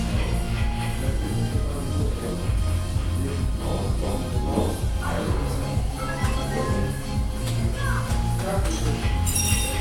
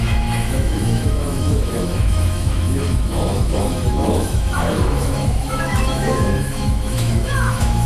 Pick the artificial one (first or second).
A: second